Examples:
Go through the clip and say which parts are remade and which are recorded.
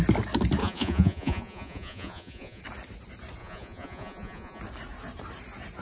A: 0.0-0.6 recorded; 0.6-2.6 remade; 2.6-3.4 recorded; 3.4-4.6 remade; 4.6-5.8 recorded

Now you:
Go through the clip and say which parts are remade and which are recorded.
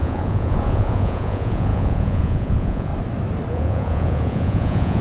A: 0.0-2.9 remade; 2.9-3.5 recorded; 3.5-5.0 remade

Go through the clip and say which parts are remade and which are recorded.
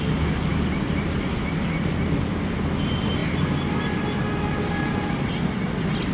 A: 0.0-6.1 recorded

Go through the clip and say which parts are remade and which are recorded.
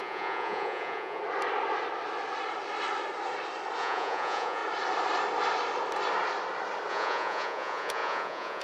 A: 0.0-1.2 remade; 1.2-3.8 recorded; 3.8-4.6 remade; 4.6-6.9 recorded; 6.9-8.6 remade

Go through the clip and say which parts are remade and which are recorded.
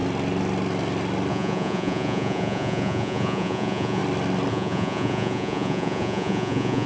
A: 0.0-1.3 recorded; 1.3-4.0 remade; 4.0-4.5 recorded; 4.5-6.9 remade